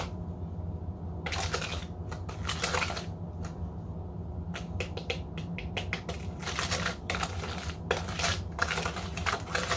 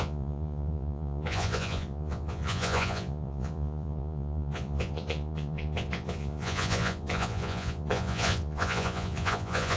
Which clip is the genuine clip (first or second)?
first